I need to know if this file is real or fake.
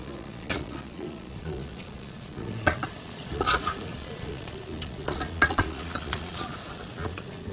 fake